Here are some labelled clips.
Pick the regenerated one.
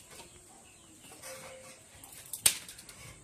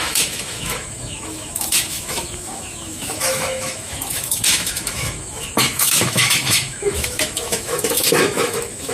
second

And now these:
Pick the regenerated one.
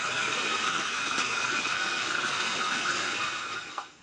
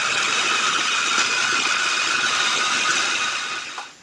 first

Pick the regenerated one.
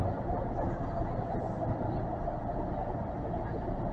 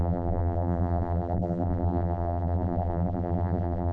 second